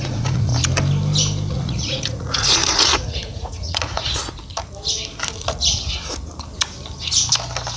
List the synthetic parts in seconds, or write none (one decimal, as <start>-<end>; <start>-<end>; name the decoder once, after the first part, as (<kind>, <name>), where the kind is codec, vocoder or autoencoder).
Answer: 0.0-0.5 (vocoder, Vocos); 1.5-4.2